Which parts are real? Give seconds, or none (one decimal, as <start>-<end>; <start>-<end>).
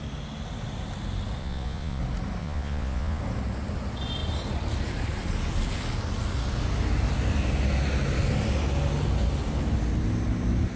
0.0-1.4; 2.0-2.4; 3.2-10.8